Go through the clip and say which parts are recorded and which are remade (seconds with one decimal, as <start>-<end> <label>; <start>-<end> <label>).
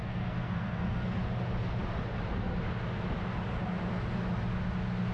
0.0-1.2 remade; 1.2-5.1 recorded